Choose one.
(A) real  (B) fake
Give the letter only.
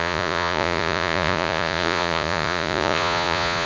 B